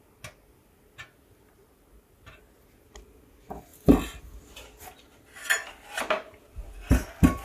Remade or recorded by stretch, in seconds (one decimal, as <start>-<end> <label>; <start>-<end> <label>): 0.0-7.4 recorded